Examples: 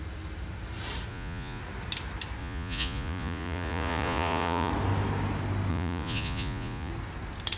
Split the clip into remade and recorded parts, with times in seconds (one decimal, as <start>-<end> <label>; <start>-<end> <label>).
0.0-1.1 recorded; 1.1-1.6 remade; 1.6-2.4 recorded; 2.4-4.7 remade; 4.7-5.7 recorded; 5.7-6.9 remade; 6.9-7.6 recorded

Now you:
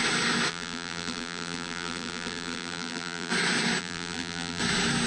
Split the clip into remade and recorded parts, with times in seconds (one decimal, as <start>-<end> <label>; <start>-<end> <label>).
0.0-0.5 recorded; 0.5-3.3 remade; 3.3-3.8 recorded; 3.8-4.6 remade; 4.6-5.1 recorded

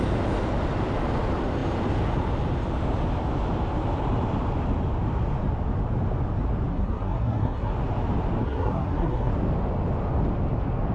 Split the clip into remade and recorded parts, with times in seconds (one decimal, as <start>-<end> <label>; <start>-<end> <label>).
0.0-6.7 recorded; 6.7-7.7 remade; 7.7-8.4 recorded; 8.4-9.3 remade; 9.3-10.9 recorded

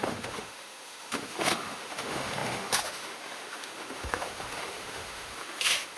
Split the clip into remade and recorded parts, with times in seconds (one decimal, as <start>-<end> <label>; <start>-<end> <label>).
0.0-6.0 remade